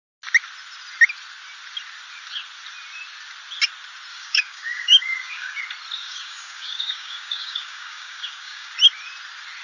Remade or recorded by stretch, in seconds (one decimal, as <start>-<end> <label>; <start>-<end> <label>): 0.0-4.1 recorded; 4.1-5.6 remade; 5.6-6.0 recorded; 6.0-8.7 remade; 8.7-9.6 recorded